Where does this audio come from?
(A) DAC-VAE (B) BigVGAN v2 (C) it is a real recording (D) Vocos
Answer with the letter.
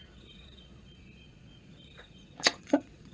D